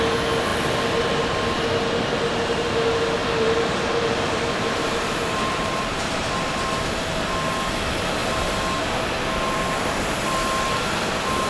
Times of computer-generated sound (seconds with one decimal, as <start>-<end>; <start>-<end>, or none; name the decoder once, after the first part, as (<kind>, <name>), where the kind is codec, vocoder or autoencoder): 3.2-6.3 (vocoder, BigVGAN v2)